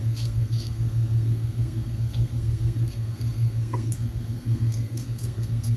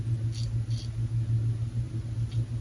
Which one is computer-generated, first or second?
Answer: first